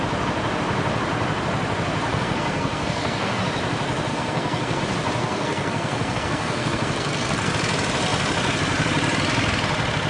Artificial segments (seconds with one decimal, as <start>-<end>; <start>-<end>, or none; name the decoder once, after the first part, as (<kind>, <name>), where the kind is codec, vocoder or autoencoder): 2.1-3.4 (codec, SNAC); 4.1-4.8; 5.2-7.5